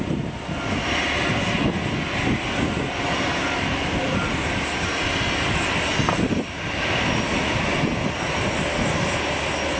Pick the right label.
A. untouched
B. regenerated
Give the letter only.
A